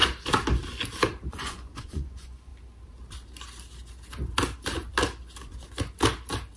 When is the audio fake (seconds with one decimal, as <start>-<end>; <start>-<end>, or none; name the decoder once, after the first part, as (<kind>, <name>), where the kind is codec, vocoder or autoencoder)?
1.3-2.5 (vocoder, Vocos)

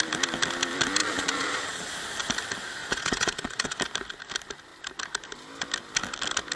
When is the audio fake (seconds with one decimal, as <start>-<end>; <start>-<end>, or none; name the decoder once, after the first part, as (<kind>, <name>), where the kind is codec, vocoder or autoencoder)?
1.0-1.9 (vocoder, Vocos); 2.8-3.8

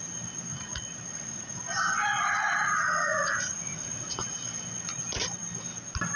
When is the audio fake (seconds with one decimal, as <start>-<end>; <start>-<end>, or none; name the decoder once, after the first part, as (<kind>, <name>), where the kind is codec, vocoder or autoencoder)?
0.5-1.6 (vocoder, Vocos); 2.0-4.1

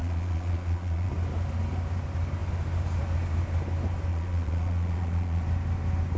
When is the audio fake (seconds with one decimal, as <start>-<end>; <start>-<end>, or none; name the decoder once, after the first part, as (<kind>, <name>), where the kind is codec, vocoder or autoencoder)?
0.0-1.1 (vocoder, Vocos); 4.1-5.4

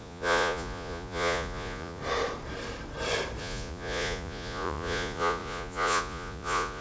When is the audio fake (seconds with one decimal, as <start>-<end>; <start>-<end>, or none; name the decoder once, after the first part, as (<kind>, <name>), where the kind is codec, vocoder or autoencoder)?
0.0-2.0 (vocoder, Vocos); 3.4-6.8

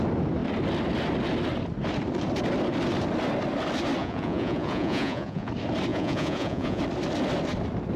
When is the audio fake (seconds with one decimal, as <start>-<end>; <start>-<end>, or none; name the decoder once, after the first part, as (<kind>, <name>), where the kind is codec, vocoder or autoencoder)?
4.0-5.5 (vocoder, Vocos); 5.9-6.8